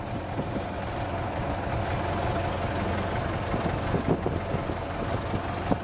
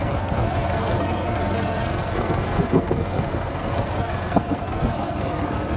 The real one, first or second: first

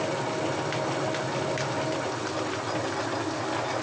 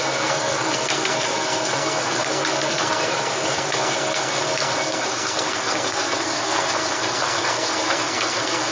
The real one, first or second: first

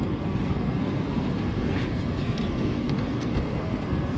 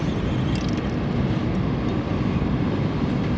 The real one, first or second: second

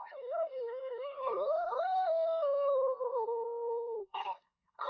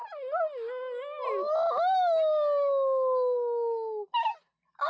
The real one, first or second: second